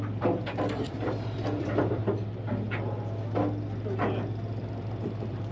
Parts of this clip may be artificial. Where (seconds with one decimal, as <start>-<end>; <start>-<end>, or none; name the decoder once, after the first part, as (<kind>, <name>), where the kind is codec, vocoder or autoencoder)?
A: 0.0-2.0 (vocoder, BigVGAN v2); 4.6-5.5